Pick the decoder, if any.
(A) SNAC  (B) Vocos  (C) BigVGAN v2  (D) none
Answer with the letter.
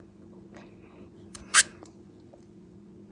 B